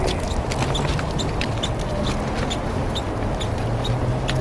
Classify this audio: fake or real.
real